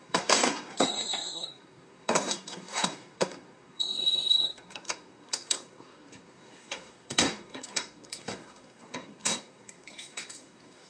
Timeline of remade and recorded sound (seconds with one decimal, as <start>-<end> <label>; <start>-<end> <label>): 0.0-10.9 remade